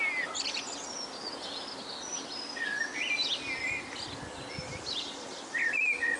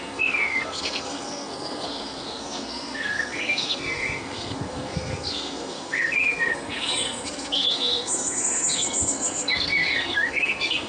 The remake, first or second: second